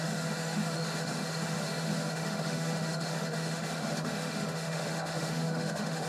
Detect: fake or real fake